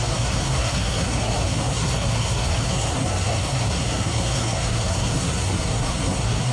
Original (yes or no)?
no